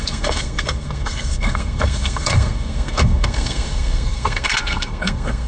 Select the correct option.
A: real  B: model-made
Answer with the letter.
B